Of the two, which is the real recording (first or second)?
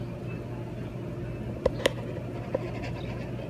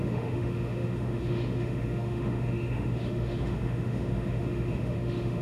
first